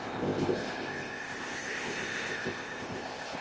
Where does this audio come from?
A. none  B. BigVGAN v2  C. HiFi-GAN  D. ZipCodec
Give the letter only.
D